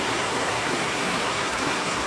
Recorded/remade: remade